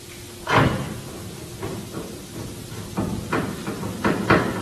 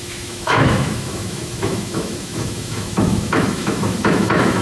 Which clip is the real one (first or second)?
first